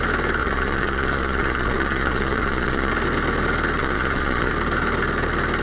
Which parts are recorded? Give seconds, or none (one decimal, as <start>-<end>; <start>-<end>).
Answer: 0.0-0.4; 2.9-3.8; 4.5-5.6